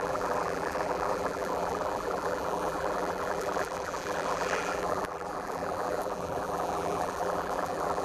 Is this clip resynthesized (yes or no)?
yes